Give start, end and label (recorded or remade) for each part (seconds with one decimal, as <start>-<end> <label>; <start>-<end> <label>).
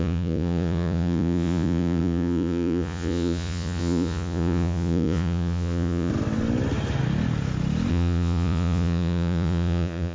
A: 0.0-6.1 remade; 6.1-7.9 recorded; 7.9-10.1 remade